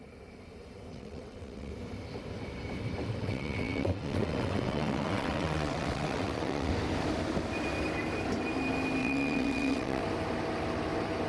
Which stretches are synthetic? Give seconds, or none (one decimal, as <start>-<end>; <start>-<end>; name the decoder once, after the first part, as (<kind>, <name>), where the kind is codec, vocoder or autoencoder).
0.9-1.7 (vocoder, WaveNeXt); 3.2-6.7; 9.0-10.0

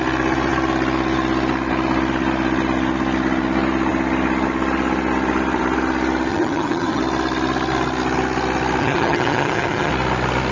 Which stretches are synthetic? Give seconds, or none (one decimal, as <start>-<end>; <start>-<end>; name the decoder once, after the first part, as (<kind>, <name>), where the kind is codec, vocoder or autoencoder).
6.3-7.0 (vocoder, HiFi-GAN); 8.8-9.9

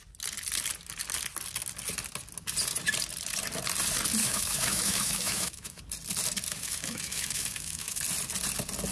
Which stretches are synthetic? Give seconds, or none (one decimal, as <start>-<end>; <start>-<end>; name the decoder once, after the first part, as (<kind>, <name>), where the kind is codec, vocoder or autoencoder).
4.2-5.8 (autoencoder, DAC-VAE); 6.5-8.0

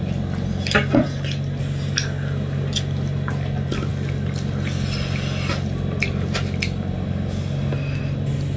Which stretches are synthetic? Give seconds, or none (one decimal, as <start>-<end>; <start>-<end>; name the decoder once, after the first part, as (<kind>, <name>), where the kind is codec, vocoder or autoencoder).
none

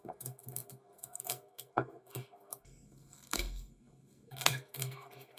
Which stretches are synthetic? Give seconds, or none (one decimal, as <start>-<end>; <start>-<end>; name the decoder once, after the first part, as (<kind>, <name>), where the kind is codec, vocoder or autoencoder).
0.0-5.4 (codec, SNAC)